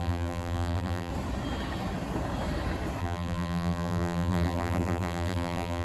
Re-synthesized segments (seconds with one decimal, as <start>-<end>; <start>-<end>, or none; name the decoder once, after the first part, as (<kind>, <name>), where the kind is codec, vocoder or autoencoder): 0.0-1.1 (vocoder, BigVGAN v2); 3.0-5.8